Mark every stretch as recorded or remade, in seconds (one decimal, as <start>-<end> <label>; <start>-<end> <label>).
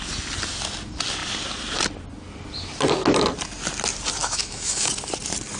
0.0-4.2 recorded; 4.2-4.9 remade; 4.9-5.6 recorded